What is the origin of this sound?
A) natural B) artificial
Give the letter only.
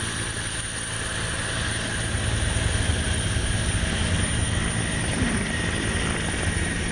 A